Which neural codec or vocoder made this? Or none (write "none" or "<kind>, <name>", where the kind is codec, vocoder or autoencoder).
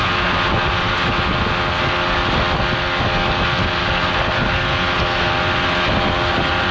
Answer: none